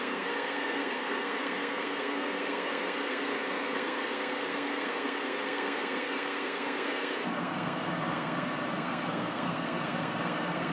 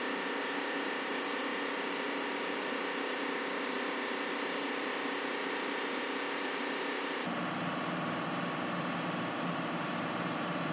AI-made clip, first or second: first